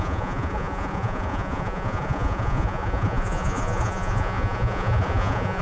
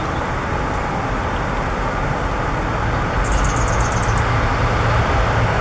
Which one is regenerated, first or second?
first